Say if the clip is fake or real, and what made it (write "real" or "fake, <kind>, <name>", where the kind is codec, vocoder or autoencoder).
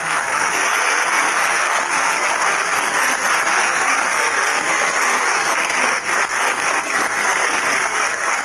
fake, codec, SNAC